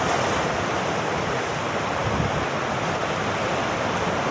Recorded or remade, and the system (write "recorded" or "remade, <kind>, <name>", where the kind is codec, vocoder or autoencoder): recorded